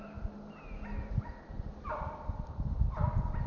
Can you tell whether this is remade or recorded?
recorded